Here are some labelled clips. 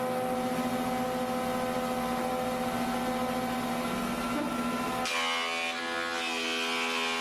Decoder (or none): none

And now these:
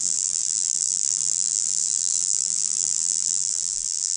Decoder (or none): vocoder, BigVGAN v2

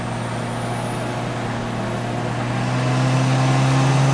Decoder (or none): none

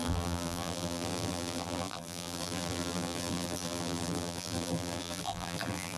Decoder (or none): vocoder, BigVGAN v2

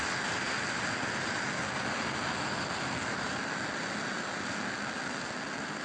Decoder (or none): none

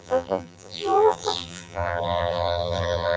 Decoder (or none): vocoder, BigVGAN v2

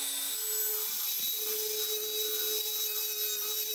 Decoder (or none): none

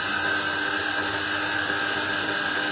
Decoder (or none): none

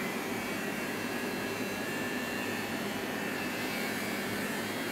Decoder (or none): vocoder, BigVGAN v2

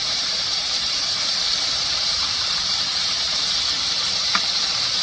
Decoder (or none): vocoder, BigVGAN v2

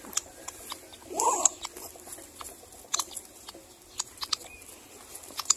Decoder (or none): none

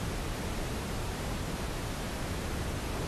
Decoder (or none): none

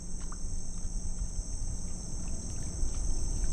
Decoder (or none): vocoder, BigVGAN v2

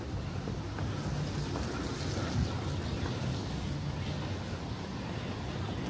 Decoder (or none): none